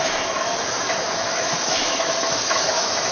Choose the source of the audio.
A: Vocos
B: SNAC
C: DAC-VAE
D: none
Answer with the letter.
C